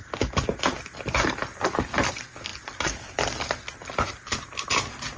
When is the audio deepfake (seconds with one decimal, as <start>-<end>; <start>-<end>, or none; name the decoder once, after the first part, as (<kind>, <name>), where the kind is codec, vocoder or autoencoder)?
none

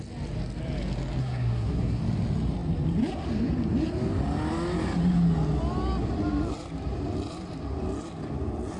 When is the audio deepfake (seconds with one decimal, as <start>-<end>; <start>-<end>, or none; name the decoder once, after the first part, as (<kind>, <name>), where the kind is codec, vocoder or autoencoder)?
1.2-2.0 (codec, SNAC)

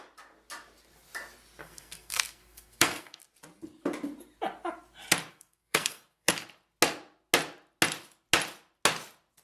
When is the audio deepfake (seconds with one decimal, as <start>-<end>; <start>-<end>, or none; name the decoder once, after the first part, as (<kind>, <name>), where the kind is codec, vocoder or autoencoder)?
1.6-3.2 (codec, SNAC); 5.3-6.3

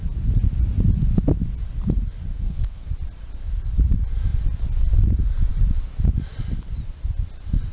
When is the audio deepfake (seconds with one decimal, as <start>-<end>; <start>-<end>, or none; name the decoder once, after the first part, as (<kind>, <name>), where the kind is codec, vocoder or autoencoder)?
2.3-2.9 (codec, SNAC)